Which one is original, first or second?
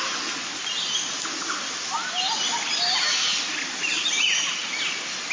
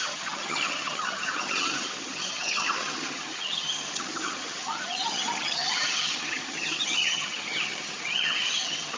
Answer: first